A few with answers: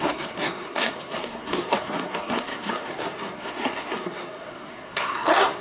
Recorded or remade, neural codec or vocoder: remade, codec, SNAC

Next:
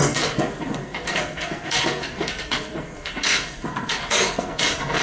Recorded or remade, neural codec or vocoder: remade, codec, SNAC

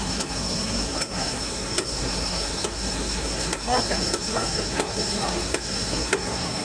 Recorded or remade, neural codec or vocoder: remade, codec, SNAC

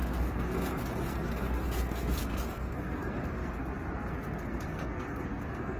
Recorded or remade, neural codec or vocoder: remade, codec, SNAC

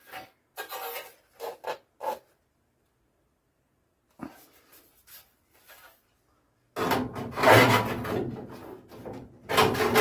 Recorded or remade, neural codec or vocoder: recorded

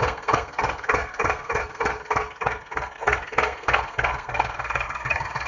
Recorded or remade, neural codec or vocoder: remade, codec, SNAC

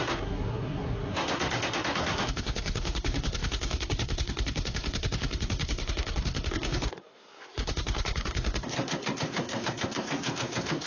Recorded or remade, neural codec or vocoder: remade, codec, SNAC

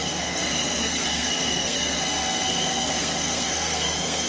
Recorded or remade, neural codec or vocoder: remade, codec, SNAC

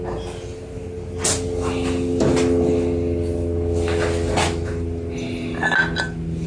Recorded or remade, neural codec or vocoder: recorded